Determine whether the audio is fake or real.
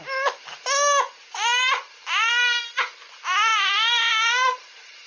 real